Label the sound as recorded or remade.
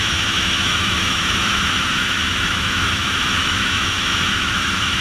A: remade